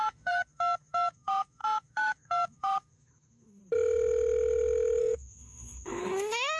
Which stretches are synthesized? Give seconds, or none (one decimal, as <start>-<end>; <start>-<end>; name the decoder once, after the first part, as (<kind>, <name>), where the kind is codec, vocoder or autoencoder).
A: 0.0-3.6 (autoencoder, DAC-VAE); 5.0-6.6

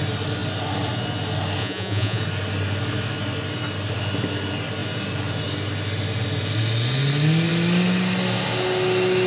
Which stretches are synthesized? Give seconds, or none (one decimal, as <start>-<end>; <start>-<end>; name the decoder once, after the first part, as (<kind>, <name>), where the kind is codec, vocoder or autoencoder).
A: 1.6-2.2 (vocoder, Vocos)